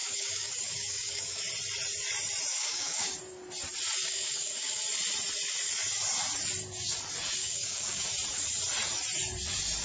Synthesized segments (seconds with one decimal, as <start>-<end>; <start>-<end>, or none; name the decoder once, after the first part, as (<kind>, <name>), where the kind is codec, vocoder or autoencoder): 0.0-1.5 (codec, DAC); 2.5-3.2; 4.0-4.8; 7.4-8.0